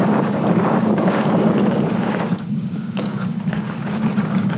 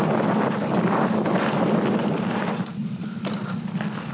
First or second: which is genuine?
second